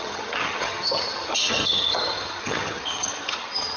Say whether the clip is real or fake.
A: fake